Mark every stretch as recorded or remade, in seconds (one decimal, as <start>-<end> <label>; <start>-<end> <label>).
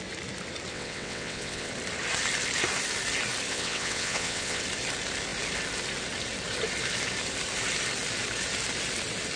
0.0-0.7 recorded; 0.7-1.7 remade; 1.7-3.5 recorded; 3.5-4.6 remade; 4.6-9.4 recorded